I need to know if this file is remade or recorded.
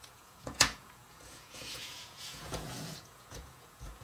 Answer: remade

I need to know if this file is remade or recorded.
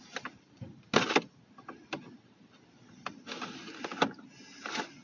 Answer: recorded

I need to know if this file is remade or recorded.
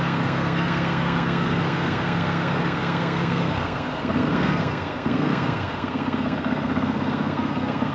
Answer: remade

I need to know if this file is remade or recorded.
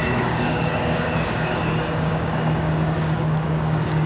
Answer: remade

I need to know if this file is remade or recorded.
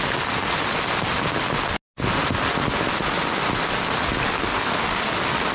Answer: recorded